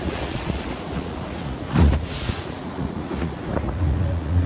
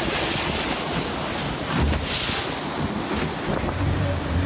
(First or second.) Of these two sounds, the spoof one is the first